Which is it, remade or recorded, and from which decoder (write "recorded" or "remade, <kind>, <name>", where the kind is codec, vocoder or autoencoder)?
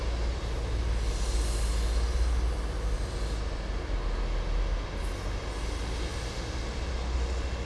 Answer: recorded